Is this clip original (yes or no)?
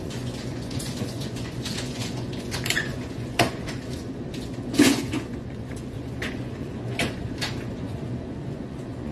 no